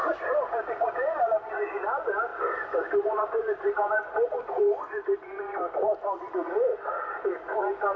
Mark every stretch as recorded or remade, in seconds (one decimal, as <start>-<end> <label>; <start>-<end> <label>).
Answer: 0.0-2.3 remade; 2.3-3.2 recorded; 3.2-6.7 remade; 6.7-7.6 recorded; 7.6-8.0 remade